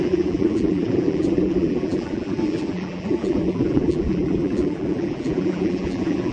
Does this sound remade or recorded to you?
remade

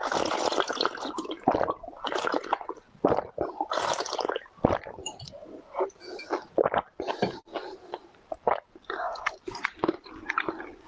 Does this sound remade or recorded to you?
recorded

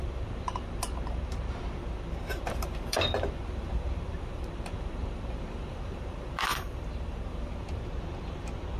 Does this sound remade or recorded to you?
remade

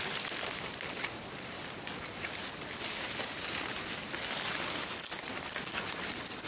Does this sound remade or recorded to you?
recorded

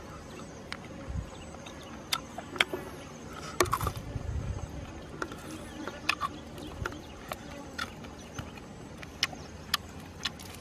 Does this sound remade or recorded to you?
recorded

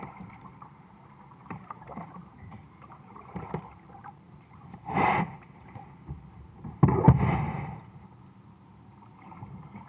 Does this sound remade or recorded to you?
remade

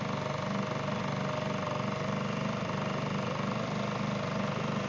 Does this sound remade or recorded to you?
recorded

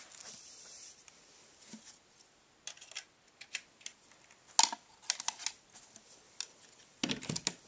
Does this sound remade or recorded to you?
recorded